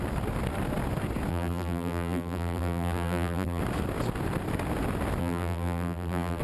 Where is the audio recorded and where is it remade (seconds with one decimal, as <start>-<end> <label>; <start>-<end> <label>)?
0.0-1.3 recorded; 1.3-3.6 remade; 3.6-5.2 recorded; 5.2-6.4 remade